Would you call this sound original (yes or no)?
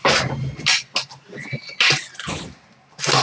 yes